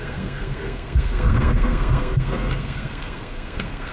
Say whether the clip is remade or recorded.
remade